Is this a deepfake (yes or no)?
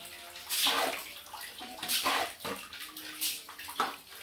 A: no